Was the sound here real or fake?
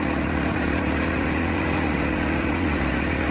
fake